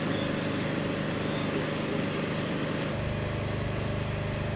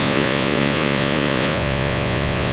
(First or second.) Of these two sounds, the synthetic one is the second